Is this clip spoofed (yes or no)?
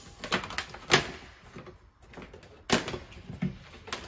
no